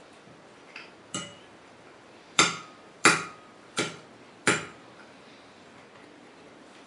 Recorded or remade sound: remade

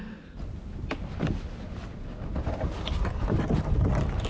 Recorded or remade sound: recorded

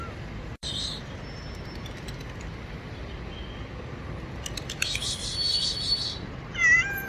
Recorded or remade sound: recorded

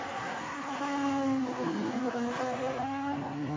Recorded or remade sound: remade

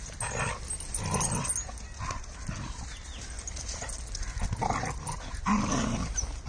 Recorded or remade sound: recorded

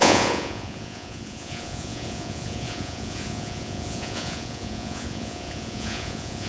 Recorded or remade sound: remade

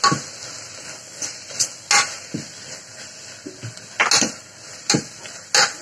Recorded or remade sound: recorded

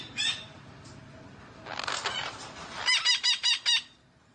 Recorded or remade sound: recorded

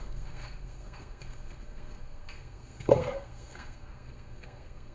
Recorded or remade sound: remade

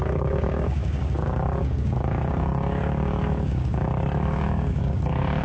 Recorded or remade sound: remade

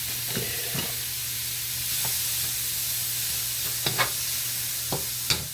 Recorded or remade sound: recorded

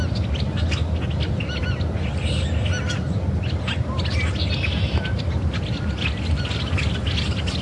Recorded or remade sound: recorded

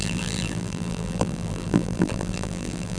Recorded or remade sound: remade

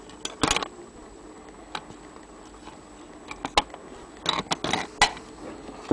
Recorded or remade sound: recorded